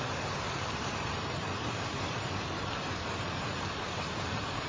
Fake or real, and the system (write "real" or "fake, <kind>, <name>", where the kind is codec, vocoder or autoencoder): fake, vocoder, BigVGAN v2